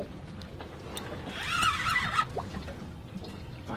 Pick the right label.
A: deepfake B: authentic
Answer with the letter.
B